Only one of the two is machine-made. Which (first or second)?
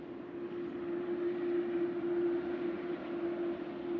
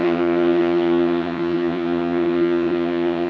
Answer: second